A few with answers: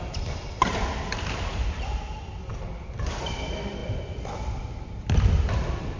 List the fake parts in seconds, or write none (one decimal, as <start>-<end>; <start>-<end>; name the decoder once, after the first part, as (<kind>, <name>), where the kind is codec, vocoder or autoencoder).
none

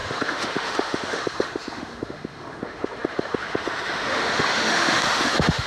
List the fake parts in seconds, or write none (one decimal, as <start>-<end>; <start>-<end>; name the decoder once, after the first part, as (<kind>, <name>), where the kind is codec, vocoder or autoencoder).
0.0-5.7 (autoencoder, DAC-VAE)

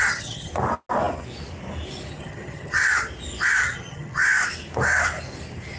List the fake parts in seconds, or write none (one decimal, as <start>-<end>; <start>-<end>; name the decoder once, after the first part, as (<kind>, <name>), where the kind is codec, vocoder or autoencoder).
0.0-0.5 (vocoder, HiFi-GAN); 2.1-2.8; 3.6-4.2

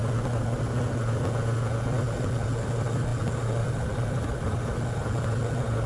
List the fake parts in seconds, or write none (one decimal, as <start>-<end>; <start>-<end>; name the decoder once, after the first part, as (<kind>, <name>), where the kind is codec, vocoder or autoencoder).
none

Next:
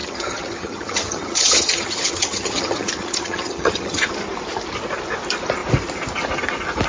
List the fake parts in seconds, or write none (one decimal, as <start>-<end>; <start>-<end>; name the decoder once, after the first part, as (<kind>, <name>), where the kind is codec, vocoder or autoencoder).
0.0-4.1 (vocoder, HiFi-GAN)

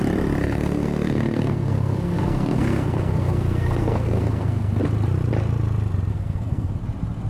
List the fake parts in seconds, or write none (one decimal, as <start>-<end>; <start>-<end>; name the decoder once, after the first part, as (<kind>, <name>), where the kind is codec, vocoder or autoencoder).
0.4-4.8 (codec, SNAC); 6.1-6.7

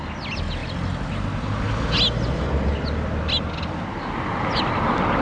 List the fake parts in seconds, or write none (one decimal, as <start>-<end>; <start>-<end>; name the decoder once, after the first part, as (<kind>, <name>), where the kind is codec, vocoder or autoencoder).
none

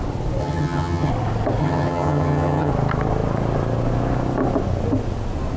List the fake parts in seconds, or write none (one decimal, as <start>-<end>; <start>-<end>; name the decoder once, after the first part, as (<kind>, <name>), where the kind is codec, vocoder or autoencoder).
0.4-1.1 (vocoder, HiFi-GAN); 1.6-2.7